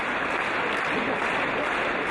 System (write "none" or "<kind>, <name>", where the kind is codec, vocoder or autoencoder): none